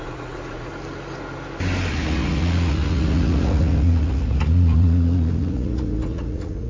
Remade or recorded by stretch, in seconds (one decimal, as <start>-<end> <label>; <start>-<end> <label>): 0.0-0.7 remade; 0.7-1.9 recorded; 1.9-6.7 remade